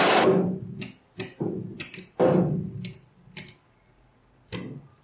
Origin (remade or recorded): recorded